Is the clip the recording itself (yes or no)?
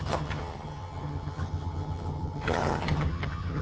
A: no